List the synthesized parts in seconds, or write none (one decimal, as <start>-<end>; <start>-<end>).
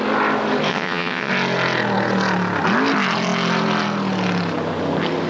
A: 0.7-1.3